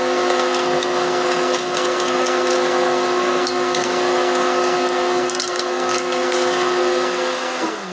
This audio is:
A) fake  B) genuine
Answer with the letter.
A